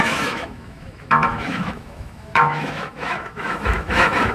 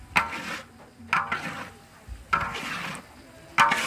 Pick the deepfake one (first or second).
first